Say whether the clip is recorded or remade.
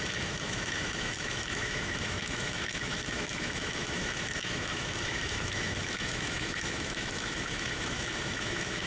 remade